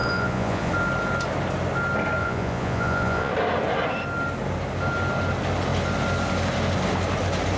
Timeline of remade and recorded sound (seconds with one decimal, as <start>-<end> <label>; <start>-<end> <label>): 0.0-0.7 remade; 0.7-2.2 recorded; 2.2-3.3 remade; 3.3-7.6 recorded